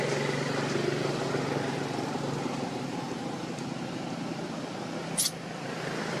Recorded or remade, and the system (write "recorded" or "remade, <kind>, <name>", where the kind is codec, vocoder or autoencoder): recorded